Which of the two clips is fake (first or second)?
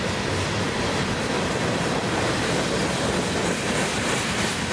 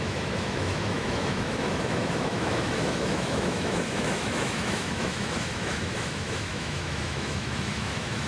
second